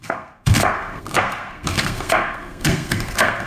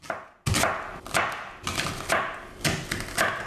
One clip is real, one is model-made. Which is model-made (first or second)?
first